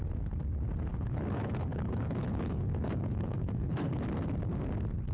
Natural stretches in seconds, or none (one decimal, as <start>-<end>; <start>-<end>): 0.0-0.9; 4.0-5.1